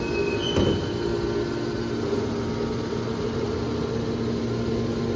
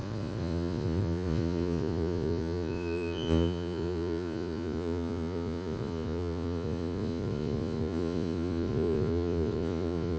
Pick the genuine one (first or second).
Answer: first